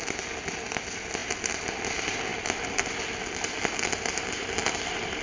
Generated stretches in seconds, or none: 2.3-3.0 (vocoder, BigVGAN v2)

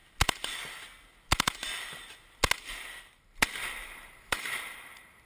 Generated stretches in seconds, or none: 3.8-5.3 (vocoder, BigVGAN v2)

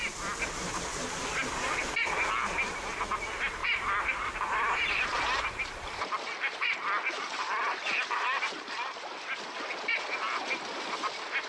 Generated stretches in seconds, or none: 3.6-8.7 (vocoder, BigVGAN v2)

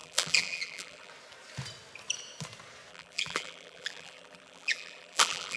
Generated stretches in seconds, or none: 0.0-1.1 (vocoder, BigVGAN v2); 2.9-5.6

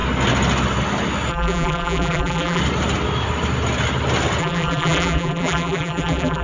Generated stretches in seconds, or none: 1.3-2.6 (vocoder, BigVGAN v2); 4.4-6.4

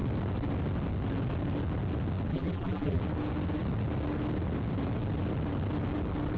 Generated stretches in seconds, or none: 2.3-3.0 (vocoder, BigVGAN v2)